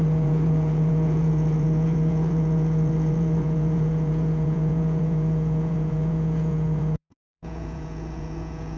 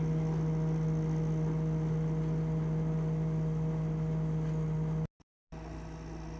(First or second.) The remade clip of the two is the first